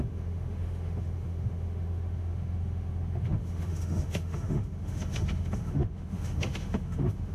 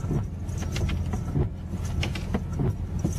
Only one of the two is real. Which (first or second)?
second